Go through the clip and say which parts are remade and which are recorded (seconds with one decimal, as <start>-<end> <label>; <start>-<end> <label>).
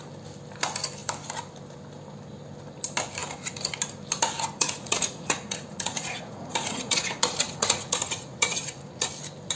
0.0-4.6 recorded; 4.6-9.1 remade; 9.1-9.6 recorded